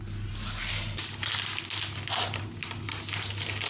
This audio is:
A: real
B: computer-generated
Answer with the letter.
A